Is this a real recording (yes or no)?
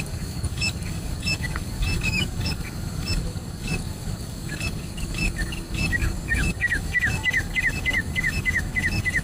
no